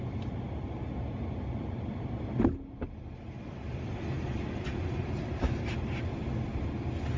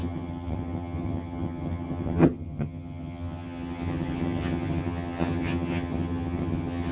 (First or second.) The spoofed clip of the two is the second